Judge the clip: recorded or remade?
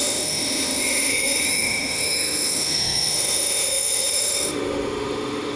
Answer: remade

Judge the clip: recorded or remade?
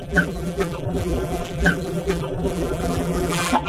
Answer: remade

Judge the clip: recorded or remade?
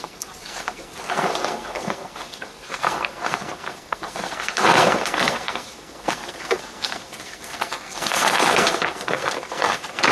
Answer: remade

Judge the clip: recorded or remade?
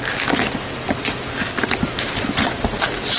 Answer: recorded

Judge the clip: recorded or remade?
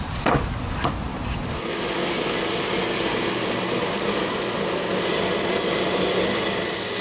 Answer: recorded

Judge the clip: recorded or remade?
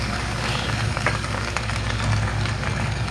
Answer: remade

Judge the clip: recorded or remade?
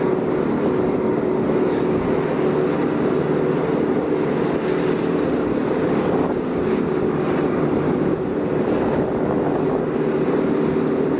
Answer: recorded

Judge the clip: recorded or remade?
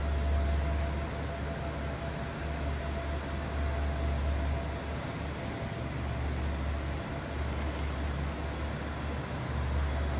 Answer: recorded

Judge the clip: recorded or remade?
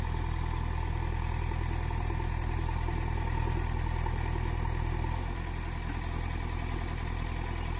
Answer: recorded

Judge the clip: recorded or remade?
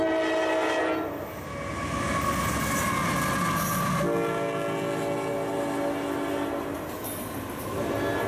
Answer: recorded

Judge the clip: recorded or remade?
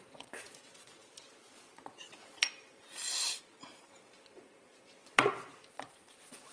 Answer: remade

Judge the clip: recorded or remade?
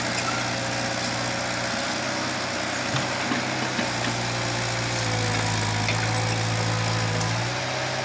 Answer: recorded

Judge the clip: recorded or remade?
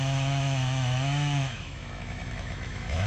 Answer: remade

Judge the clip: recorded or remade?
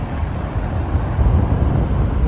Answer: recorded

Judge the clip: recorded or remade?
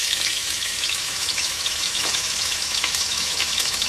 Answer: remade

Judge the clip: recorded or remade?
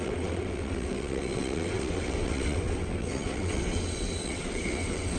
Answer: remade